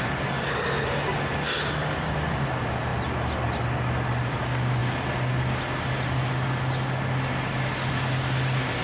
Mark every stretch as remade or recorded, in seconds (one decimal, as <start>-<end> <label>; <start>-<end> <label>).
0.0-8.8 recorded